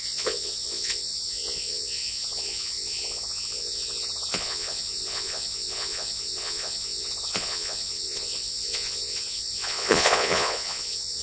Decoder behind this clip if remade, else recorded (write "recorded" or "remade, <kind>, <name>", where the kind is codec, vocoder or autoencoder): remade, vocoder, Vocos